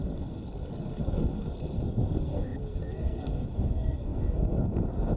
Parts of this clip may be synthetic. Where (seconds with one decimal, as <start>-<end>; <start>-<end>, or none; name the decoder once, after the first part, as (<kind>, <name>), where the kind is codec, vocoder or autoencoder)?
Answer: 0.0-5.2 (codec, SNAC)